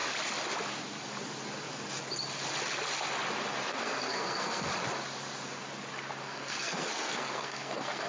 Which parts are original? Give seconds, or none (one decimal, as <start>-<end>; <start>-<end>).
0.0-3.7; 4.7-6.2